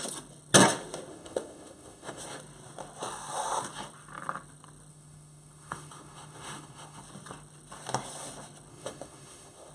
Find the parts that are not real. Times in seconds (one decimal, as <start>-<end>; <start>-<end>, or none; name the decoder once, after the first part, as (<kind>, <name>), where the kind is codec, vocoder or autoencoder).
1.1-2.2 (autoencoder, DAC-VAE); 4.9-7.0; 8.7-9.7